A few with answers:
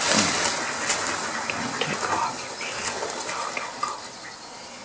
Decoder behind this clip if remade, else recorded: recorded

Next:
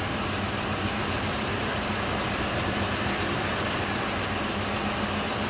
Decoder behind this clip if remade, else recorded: recorded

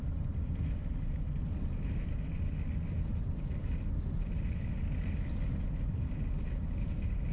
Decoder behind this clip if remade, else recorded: recorded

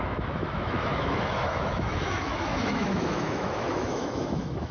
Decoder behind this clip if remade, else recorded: remade, autoencoder, DAC-VAE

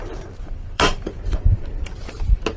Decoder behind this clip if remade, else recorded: remade, vocoder, BigVGAN v2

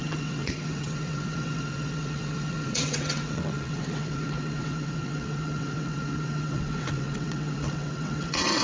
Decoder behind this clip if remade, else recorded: remade, vocoder, WaveNeXt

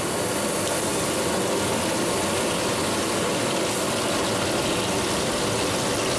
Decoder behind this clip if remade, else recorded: recorded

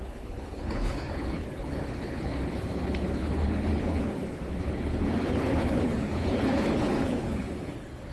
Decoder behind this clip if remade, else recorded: remade, codec, HILCodec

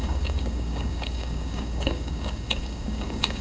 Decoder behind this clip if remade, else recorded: remade, codec, DAC